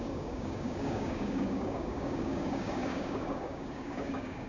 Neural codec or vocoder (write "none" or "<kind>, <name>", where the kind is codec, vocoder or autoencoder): codec, DAC